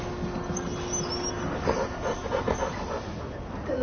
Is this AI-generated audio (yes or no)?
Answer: no